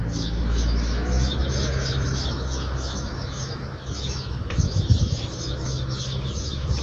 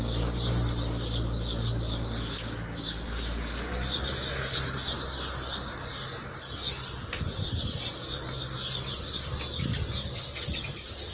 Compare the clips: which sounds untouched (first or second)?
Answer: second